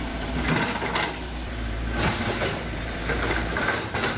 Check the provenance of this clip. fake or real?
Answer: fake